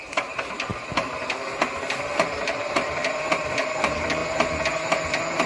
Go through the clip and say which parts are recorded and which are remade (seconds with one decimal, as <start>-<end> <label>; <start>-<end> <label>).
0.0-0.7 remade; 0.7-1.8 recorded; 1.8-3.0 remade; 3.0-3.7 recorded; 3.7-4.2 remade; 4.2-5.1 recorded; 5.1-5.5 remade